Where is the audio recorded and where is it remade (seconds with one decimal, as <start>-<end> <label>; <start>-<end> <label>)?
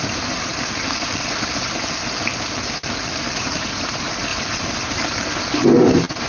0.0-0.5 remade; 0.5-3.4 recorded; 3.4-4.3 remade; 4.3-5.7 recorded; 5.7-6.3 remade